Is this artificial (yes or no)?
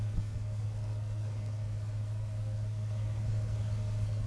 yes